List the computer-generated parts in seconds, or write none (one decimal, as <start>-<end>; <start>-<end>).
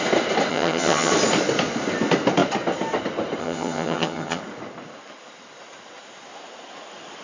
0.5-1.1; 3.4-4.4